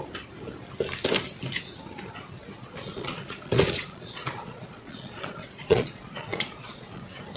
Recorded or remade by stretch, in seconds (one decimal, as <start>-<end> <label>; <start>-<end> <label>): 0.0-2.6 recorded; 2.6-7.0 remade; 7.0-7.4 recorded